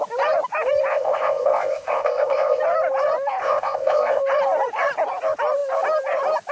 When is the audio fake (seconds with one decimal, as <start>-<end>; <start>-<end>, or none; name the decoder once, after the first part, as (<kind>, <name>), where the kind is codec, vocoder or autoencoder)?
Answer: 0.9-2.6 (codec, ZipCodec); 3.4-4.2